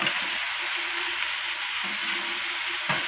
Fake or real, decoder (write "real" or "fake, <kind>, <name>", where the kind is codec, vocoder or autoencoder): real